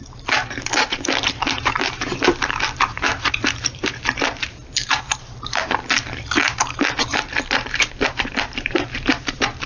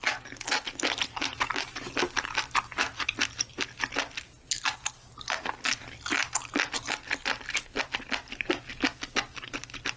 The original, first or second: second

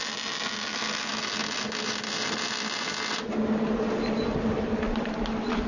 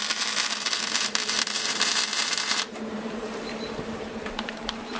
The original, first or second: first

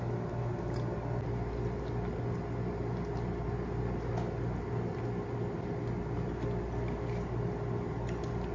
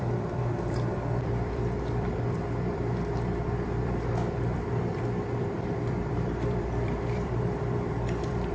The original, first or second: first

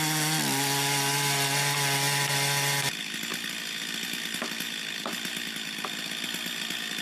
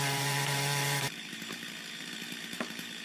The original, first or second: first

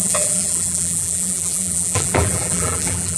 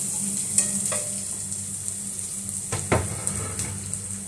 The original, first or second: second